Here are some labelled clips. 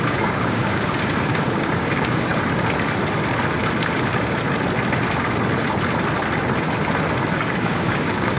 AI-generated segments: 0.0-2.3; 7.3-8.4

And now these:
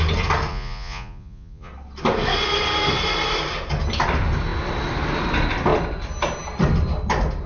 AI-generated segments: 0.5-1.7

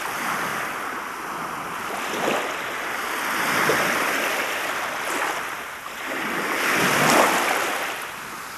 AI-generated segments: none

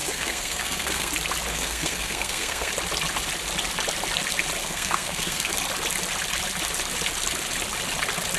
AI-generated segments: 0.0-1.1; 1.5-2.7; 4.6-5.5

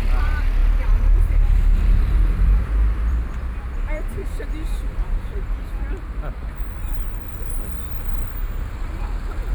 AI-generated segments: 0.0-4.2; 5.3-6.8; 8.8-9.5

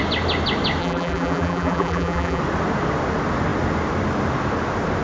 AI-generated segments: 0.8-2.4

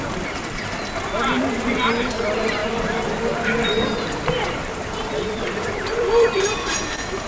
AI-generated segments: 2.6-7.3